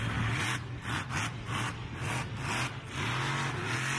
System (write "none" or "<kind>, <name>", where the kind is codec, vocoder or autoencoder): none